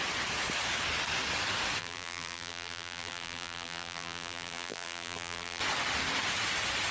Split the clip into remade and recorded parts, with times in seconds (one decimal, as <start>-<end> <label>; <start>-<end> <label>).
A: 0.0-1.8 recorded; 1.8-5.6 remade; 5.6-6.9 recorded